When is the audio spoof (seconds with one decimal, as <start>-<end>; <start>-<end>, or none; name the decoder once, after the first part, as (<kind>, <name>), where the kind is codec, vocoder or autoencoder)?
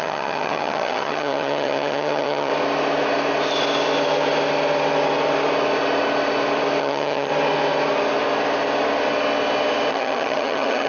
0.0-2.5 (vocoder, HiFi-GAN); 6.8-7.3; 9.9-10.9